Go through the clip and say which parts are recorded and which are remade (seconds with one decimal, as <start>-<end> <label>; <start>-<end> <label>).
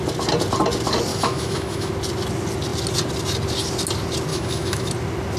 0.0-1.1 recorded; 1.1-1.9 remade; 1.9-4.3 recorded; 4.3-4.9 remade; 4.9-5.4 recorded